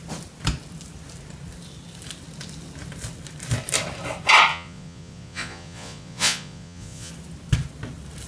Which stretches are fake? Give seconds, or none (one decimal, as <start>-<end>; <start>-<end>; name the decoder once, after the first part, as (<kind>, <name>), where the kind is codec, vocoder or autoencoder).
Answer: 4.5-7.1 (vocoder, Vocos)